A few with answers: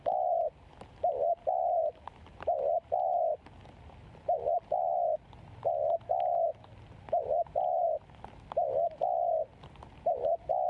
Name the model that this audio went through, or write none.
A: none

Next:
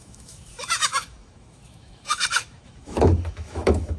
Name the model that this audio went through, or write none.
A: autoencoder, DAC-VAE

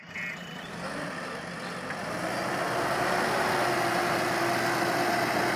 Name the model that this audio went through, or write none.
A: none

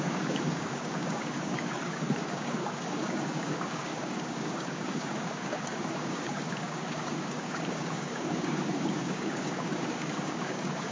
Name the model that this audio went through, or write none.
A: codec, DAC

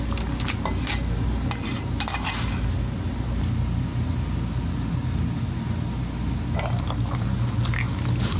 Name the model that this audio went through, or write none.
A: none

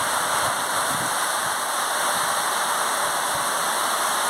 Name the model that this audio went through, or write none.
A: none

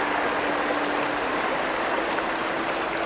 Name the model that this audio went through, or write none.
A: none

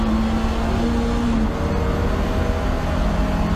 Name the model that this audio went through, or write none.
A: none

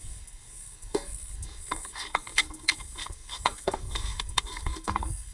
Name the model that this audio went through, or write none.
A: codec, SNAC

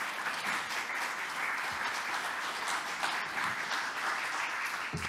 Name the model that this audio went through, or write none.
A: none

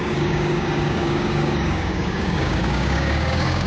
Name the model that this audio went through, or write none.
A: codec, DAC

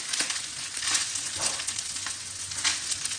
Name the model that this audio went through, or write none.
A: vocoder, Vocos